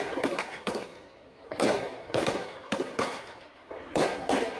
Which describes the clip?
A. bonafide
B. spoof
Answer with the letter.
B